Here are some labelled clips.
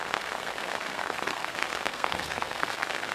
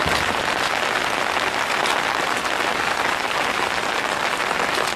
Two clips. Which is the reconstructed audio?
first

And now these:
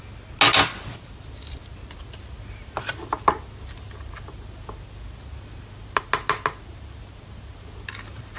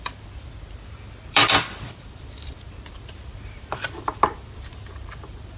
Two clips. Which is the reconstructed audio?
second